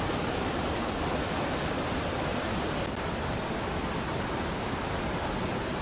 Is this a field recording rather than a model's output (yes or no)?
yes